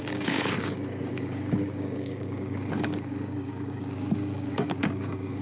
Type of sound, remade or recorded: remade